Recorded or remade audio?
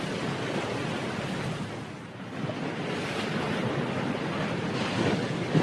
recorded